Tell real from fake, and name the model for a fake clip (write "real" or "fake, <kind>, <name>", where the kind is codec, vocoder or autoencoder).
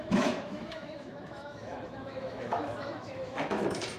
fake, autoencoder, DAC-VAE